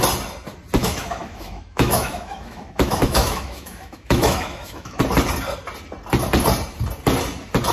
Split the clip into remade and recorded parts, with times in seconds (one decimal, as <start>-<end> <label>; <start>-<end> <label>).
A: 0.0-0.8 recorded; 0.8-5.0 remade; 5.0-7.7 recorded